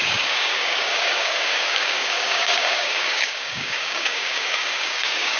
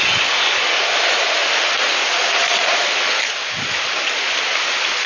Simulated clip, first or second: first